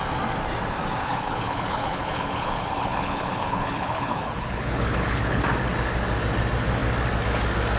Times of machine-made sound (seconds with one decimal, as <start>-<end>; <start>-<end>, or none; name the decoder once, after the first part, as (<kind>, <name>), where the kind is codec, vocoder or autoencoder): 1.0-5.4 (codec, HILCodec)